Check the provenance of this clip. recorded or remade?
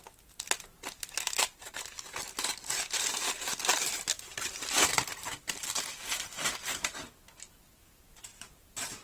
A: recorded